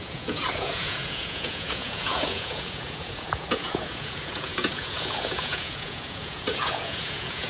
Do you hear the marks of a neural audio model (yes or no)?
yes